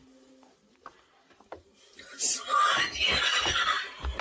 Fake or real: real